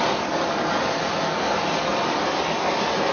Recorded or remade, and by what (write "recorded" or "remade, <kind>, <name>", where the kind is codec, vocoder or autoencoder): recorded